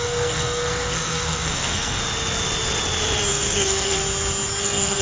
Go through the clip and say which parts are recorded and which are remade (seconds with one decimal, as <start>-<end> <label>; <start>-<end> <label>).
0.0-2.0 remade; 2.0-3.3 recorded; 3.3-4.0 remade; 4.0-4.6 recorded; 4.6-5.0 remade